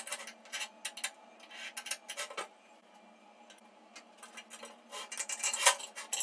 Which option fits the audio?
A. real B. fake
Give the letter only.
A